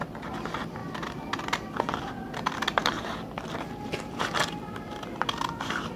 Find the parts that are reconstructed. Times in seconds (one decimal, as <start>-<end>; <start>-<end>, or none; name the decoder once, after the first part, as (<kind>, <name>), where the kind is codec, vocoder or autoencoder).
0.8-2.0 (vocoder, BigVGAN v2); 2.8-4.4